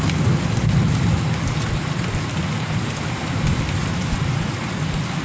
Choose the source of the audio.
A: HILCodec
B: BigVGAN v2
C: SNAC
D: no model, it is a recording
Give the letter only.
D